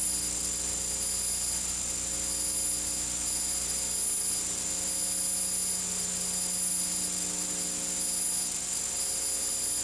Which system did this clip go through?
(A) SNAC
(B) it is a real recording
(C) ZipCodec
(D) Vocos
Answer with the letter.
B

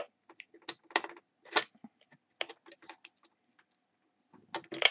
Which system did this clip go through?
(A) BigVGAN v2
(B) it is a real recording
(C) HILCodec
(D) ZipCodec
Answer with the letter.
B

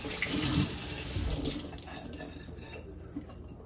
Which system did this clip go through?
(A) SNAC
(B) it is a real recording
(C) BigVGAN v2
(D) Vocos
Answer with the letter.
B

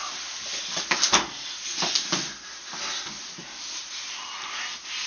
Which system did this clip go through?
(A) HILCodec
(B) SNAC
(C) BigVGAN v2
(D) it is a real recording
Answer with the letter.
D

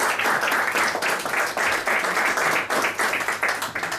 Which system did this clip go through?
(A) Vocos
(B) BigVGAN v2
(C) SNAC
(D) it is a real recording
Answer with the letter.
D